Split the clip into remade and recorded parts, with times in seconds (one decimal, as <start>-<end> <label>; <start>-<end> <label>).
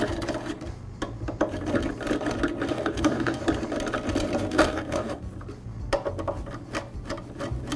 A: 0.0-2.7 recorded; 2.7-3.4 remade; 3.4-4.5 recorded; 4.5-5.2 remade; 5.2-7.8 recorded